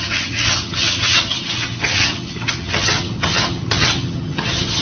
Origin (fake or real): fake